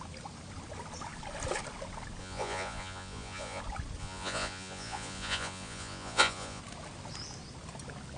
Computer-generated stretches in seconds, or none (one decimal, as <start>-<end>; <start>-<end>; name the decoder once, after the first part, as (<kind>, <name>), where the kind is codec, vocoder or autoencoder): 2.2-3.6 (vocoder, Vocos); 4.0-6.6